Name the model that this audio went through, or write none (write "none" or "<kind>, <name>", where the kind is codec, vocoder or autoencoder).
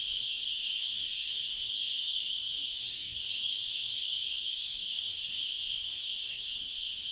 codec, DAC